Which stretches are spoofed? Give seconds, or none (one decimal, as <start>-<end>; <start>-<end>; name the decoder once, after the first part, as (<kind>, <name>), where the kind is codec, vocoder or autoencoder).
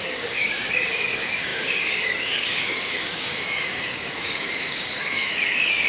0.0-5.9 (codec, DAC)